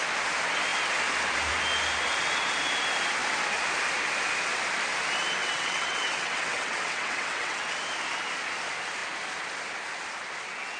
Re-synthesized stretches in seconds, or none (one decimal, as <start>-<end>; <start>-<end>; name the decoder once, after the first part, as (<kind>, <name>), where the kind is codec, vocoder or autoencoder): 5.4-7.6 (vocoder, WaveNeXt)